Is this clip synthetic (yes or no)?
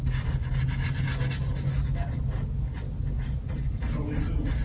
no